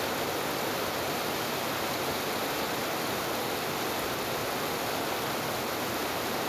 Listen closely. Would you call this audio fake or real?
real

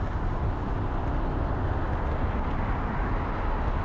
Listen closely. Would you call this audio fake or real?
real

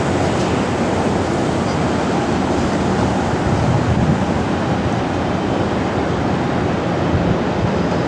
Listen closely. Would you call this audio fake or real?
real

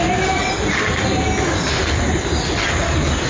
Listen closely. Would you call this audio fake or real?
real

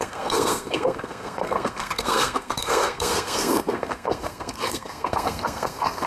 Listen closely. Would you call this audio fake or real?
fake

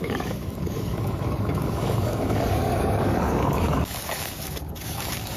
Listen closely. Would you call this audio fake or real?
fake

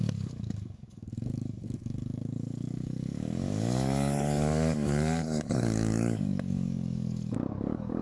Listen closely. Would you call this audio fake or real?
fake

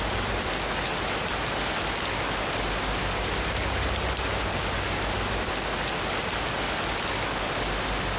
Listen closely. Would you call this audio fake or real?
real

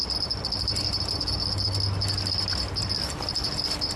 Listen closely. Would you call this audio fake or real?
real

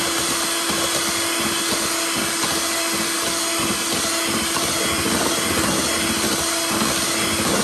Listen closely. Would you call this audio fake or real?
real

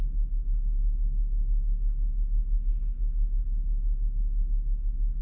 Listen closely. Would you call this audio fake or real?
real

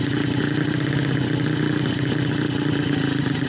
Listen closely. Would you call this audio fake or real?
real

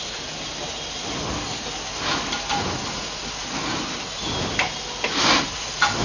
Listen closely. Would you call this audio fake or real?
real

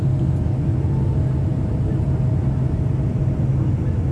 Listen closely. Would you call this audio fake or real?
real